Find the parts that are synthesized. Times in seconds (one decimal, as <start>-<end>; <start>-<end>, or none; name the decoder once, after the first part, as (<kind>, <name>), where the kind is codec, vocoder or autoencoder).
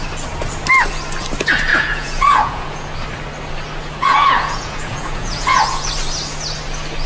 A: 1.7-2.9 (vocoder, Vocos); 4.0-5.9